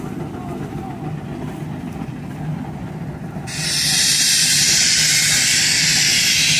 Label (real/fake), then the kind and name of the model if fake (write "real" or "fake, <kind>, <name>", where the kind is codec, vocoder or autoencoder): real